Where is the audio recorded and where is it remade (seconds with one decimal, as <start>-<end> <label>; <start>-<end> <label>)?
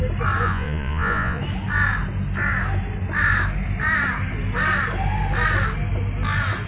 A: 0.0-0.4 recorded; 0.4-1.4 remade; 1.4-6.7 recorded